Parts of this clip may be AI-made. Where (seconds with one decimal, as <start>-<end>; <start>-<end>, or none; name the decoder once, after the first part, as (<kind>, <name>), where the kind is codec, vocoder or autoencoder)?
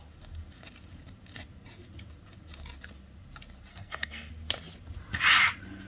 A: 3.7-4.3 (codec, SNAC)